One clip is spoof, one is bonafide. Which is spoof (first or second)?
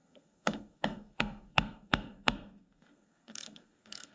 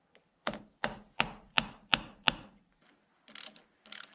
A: first